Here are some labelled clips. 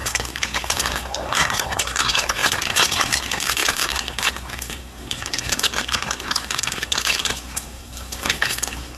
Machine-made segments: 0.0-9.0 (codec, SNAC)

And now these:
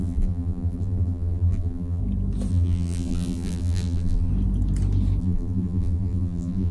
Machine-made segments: 0.0-2.0 (vocoder, BigVGAN v2); 2.5-4.3; 5.2-6.7

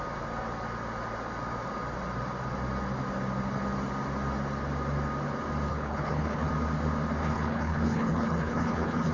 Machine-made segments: 5.7-6.5 (codec, HILCodec); 7.2-9.1

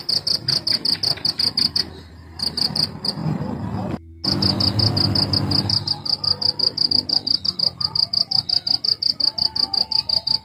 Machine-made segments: none

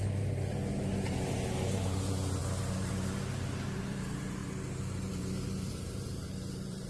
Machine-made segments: 0.0-4.4 (vocoder, BigVGAN v2); 5.1-6.9

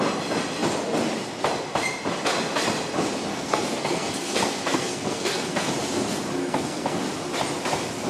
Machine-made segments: 3.3-5.7 (codec, SNAC); 6.4-7.0

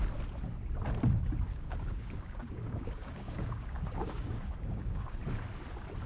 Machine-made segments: 1.5-5.2 (codec, DAC)